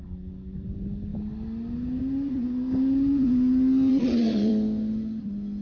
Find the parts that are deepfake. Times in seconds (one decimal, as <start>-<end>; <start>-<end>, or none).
3.9-4.5